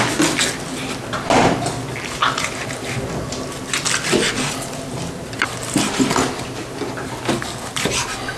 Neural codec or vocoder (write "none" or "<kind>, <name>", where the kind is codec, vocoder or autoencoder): none